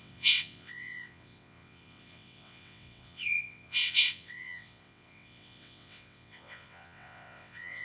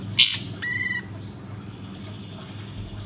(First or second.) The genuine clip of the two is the second